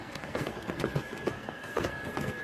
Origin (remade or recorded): remade